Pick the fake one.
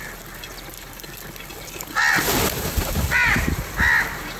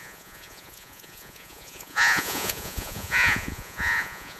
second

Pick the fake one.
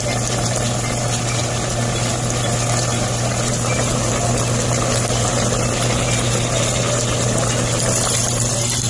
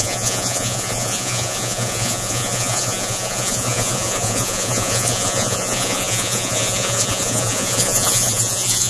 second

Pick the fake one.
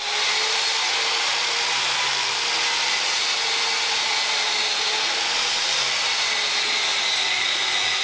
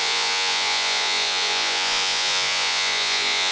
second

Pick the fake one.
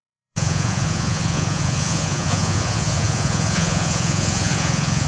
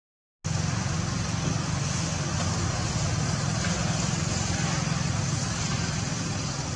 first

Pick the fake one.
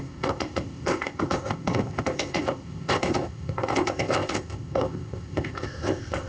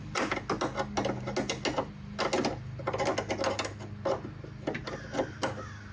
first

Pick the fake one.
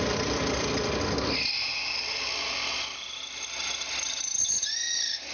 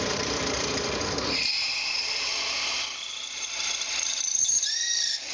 second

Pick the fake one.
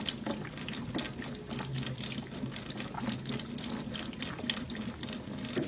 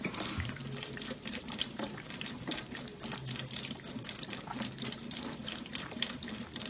second